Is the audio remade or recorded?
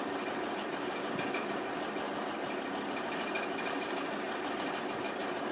recorded